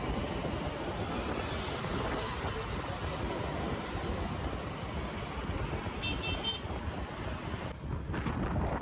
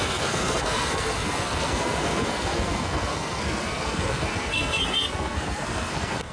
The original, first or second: first